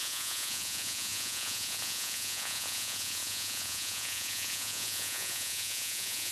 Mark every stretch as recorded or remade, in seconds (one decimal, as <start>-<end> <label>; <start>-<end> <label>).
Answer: 0.0-6.3 remade